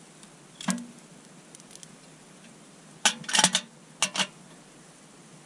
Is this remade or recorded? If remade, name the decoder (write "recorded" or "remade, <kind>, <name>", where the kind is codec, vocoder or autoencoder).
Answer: recorded